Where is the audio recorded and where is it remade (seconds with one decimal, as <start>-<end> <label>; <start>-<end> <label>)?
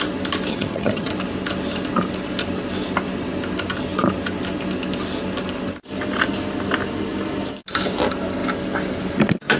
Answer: 0.0-0.5 recorded; 0.5-1.1 remade; 1.1-9.6 recorded